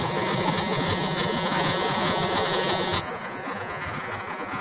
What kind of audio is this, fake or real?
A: fake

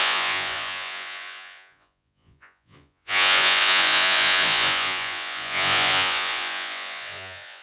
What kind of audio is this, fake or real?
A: fake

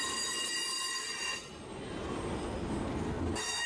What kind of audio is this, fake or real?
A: real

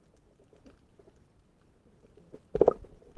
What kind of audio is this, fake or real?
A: real